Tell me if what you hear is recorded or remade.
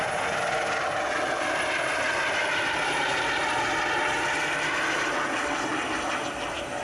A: recorded